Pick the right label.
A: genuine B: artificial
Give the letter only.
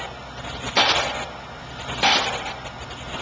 A